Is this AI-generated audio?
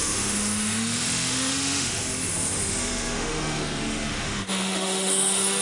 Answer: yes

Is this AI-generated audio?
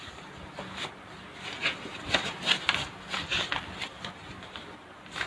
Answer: no